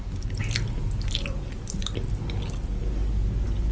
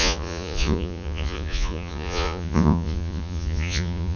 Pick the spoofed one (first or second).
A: second